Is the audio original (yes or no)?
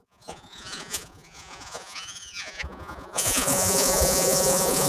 no